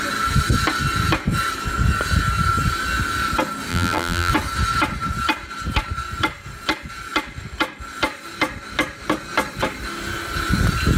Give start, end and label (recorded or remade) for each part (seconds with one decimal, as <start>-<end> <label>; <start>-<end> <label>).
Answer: 0.0-3.7 recorded; 3.7-4.3 remade; 4.3-11.0 recorded